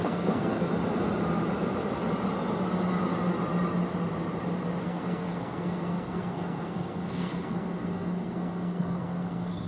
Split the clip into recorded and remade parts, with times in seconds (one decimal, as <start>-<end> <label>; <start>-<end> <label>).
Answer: 0.0-0.7 remade; 0.7-4.8 recorded; 4.8-9.7 remade